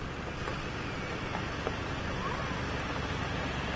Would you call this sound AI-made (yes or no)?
no